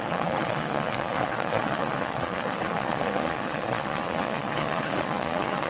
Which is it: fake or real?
fake